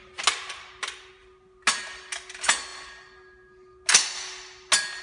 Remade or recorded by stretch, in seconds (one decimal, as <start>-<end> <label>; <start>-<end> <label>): 0.0-5.0 recorded